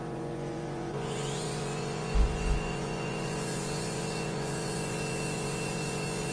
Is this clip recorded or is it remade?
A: remade